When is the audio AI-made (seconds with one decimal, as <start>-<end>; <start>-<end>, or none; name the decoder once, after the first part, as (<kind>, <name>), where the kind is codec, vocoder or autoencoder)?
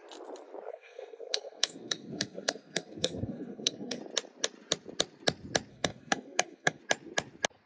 0.7-4.0 (codec, SNAC); 5.7-6.8